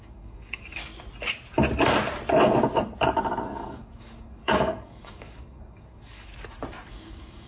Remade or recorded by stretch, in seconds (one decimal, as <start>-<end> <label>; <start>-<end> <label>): 0.0-0.9 remade; 0.9-3.4 recorded; 3.4-6.3 remade; 6.3-6.9 recorded; 6.9-7.5 remade